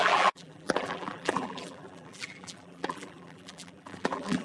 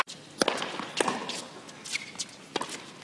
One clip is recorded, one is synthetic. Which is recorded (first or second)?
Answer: second